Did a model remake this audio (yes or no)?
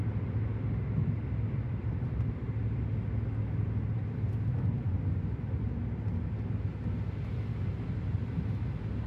no